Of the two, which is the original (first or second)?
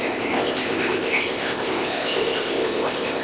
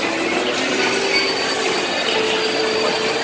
second